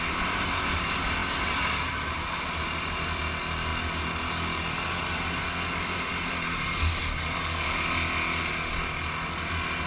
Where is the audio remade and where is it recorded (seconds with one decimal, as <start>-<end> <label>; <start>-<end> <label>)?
0.0-9.9 recorded